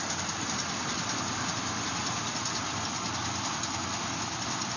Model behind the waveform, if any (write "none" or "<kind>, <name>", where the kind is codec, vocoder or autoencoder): none